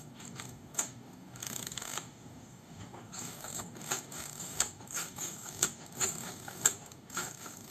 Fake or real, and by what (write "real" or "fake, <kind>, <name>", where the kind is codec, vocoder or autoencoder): fake, codec, DAC